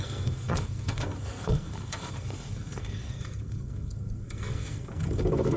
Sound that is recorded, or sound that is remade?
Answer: remade